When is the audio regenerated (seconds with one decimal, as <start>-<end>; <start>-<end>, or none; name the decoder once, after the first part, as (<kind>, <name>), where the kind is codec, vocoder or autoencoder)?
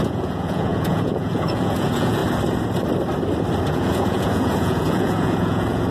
0.0-2.2 (vocoder, Vocos); 3.6-5.9